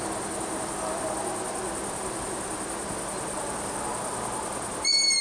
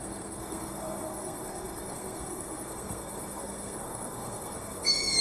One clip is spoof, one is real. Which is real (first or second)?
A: first